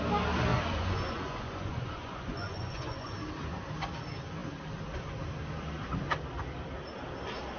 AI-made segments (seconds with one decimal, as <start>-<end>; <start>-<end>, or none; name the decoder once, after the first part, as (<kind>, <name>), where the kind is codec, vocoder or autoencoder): 0.5-3.1 (vocoder, Vocos)